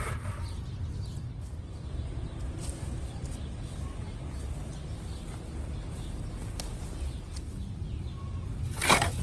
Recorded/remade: recorded